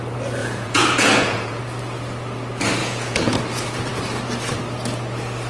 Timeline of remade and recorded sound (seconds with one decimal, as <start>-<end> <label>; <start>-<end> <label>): 0.0-0.4 recorded; 0.4-1.6 remade; 1.6-2.8 recorded; 2.8-3.4 remade; 3.4-5.5 recorded